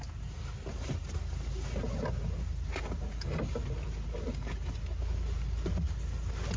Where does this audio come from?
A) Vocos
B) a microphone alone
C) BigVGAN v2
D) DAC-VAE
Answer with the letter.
B